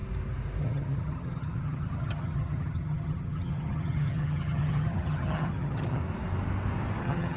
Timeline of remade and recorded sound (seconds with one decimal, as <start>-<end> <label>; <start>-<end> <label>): 0.0-0.6 recorded; 0.6-6.0 remade; 6.0-7.0 recorded; 7.0-7.4 remade